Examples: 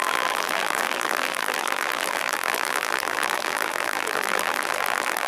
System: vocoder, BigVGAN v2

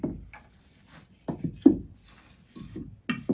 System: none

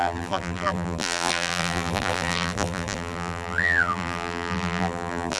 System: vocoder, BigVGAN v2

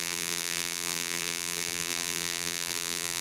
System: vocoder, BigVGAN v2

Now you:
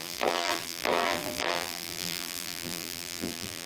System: vocoder, BigVGAN v2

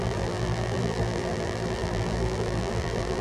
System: vocoder, BigVGAN v2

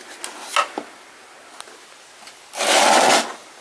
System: none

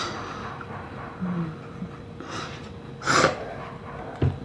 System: vocoder, BigVGAN v2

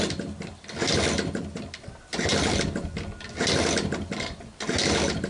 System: none